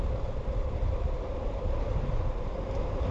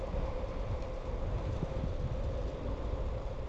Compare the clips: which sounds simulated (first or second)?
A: first